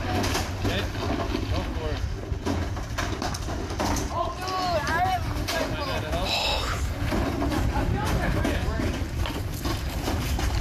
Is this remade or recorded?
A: recorded